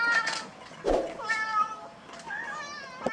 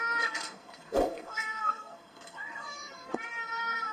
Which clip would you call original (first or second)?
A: first